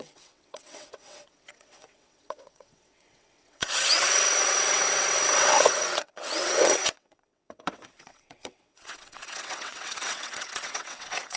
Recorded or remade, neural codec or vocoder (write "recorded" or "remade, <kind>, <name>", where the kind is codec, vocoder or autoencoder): remade, vocoder, WaveNeXt